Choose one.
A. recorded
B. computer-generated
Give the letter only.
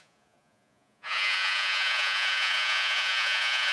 B